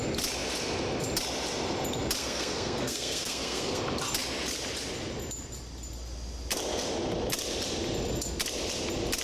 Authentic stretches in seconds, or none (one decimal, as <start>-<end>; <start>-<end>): 0.0-2.2; 3.8-9.2